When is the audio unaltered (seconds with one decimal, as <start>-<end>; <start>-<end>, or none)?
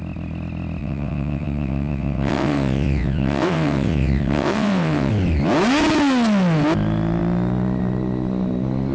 0.0-0.8; 5.1-8.9